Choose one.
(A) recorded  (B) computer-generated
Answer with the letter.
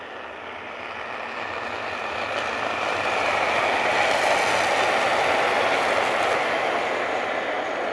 A